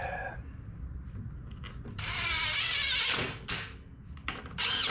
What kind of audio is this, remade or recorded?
recorded